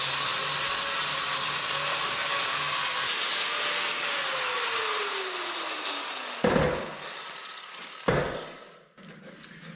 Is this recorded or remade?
recorded